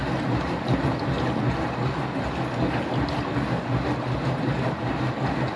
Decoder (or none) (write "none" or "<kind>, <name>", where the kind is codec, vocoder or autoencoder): none